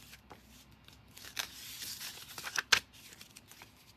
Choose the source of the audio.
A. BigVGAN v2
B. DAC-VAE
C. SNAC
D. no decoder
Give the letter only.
D